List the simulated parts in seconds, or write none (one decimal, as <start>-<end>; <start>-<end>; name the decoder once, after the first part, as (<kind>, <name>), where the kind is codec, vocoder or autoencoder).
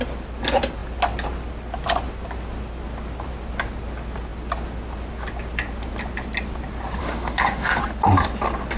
7.0-7.8 (autoencoder, DAC-VAE)